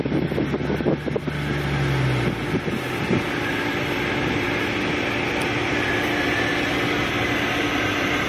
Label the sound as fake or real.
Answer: real